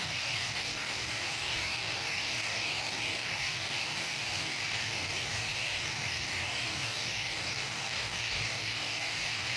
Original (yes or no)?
no